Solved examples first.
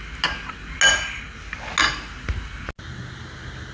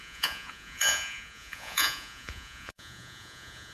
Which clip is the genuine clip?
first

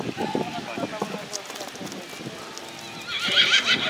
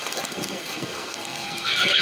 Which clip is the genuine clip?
first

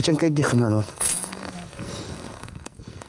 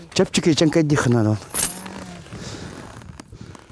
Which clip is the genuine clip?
second